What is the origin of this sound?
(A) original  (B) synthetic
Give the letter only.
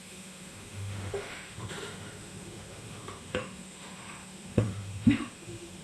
B